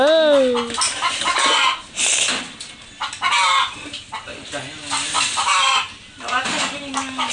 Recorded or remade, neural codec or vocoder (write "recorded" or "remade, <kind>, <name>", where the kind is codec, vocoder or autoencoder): recorded